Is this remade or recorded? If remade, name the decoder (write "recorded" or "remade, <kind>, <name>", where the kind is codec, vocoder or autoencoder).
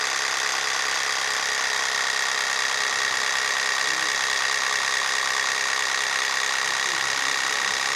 recorded